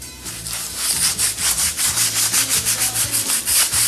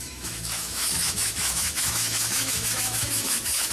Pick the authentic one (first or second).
first